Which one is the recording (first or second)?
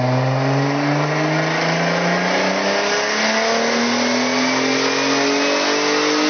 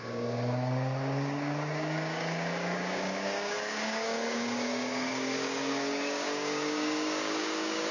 first